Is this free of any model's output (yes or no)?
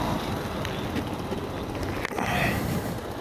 yes